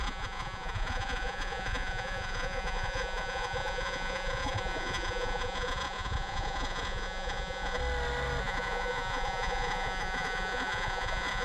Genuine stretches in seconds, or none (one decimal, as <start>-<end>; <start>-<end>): 7.8-8.4